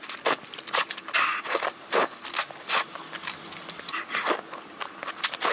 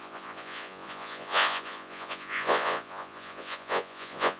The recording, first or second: first